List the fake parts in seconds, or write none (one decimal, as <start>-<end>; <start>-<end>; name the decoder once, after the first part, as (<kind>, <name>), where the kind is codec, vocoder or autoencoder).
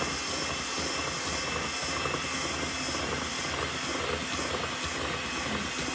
none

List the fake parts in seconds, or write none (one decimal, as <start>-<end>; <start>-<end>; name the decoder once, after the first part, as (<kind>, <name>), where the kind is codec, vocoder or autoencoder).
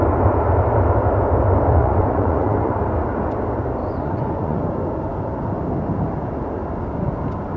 1.8-2.7 (vocoder, Vocos); 3.8-4.6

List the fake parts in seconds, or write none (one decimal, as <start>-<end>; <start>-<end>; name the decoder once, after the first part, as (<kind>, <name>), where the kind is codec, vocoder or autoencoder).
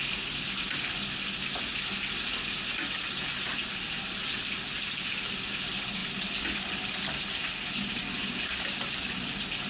none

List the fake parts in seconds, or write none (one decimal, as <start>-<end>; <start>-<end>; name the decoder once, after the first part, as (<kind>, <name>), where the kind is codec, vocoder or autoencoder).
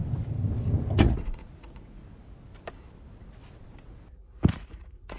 1.0-2.0 (vocoder, Vocos); 4.5-5.2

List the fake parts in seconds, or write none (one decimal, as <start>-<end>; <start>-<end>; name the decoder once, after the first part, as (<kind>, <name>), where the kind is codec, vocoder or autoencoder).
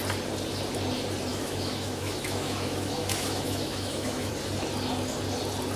1.3-4.3 (autoencoder, DAC-VAE)